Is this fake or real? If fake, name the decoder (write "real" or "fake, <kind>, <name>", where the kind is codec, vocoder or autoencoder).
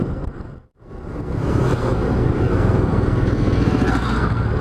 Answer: fake, codec, SNAC